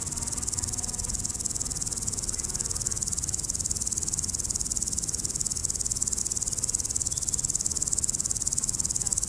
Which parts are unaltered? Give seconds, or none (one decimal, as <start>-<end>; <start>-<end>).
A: 0.0-9.3